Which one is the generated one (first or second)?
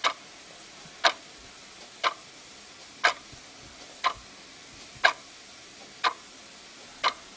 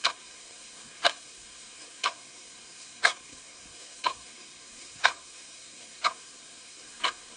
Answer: second